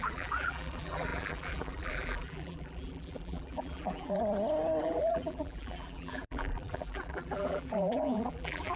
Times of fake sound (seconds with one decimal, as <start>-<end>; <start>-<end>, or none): 0.0-4.2; 4.8-8.8